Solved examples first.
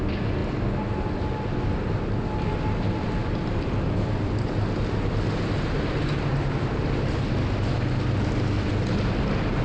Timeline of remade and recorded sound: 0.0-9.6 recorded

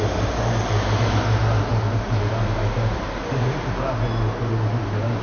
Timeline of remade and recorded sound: 0.0-5.2 recorded

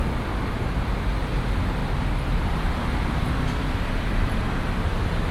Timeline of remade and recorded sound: 0.0-5.3 recorded

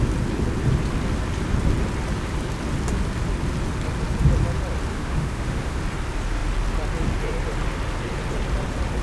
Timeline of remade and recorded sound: 0.0-4.9 recorded; 4.9-5.8 remade; 5.8-9.0 recorded

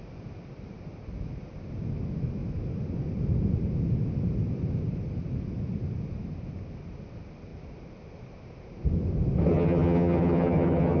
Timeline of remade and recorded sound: 0.0-9.5 recorded; 9.5-11.0 remade

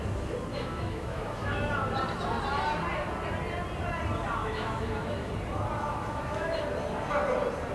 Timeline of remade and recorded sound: 0.0-0.5 recorded; 0.5-1.7 remade; 1.7-4.4 recorded; 4.4-5.3 remade; 5.3-5.9 recorded; 5.9-6.6 remade; 6.6-7.7 recorded

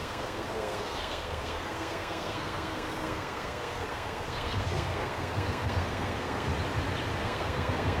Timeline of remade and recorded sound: 0.0-6.5 remade; 6.5-7.2 recorded; 7.2-8.0 remade